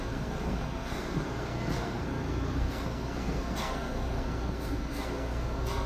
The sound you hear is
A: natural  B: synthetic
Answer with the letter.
B